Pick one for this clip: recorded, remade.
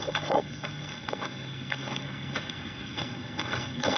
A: remade